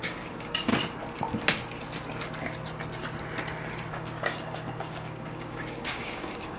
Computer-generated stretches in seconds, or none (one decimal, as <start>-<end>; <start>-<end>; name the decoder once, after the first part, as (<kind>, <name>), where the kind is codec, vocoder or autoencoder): 0.0-0.7 (codec, DAC); 3.9-6.6